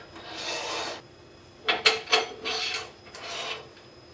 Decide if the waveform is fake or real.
fake